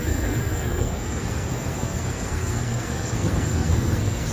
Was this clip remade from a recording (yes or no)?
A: yes